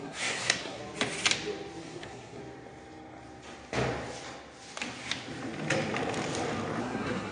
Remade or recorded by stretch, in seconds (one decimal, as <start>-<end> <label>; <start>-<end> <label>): 0.0-0.8 remade; 0.8-1.8 recorded; 1.8-2.4 remade; 2.4-6.8 recorded; 6.8-7.3 remade